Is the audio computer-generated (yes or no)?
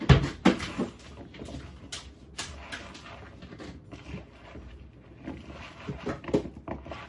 no